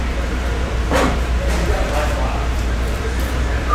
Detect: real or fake fake